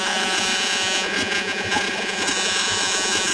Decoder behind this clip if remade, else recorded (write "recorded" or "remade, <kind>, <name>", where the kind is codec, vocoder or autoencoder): remade, vocoder, Vocos